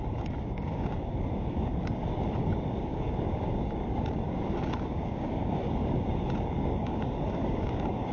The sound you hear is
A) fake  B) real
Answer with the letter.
A